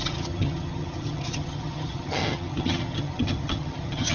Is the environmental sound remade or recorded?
remade